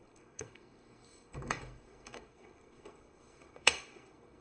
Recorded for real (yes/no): no